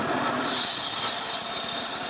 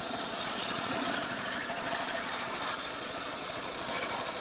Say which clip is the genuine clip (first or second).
first